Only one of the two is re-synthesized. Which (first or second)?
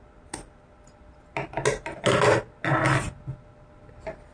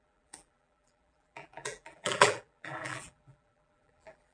second